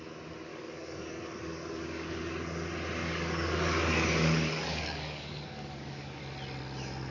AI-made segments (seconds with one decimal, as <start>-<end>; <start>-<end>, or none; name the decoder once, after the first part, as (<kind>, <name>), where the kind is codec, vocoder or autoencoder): 0.5-2.2 (codec, DAC); 3.0-6.2

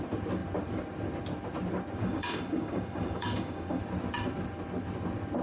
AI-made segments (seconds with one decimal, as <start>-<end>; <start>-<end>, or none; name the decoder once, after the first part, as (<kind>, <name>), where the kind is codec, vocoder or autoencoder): 2.0-3.8 (codec, DAC)